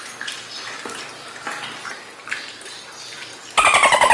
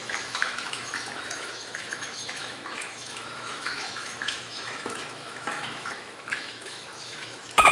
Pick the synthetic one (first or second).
second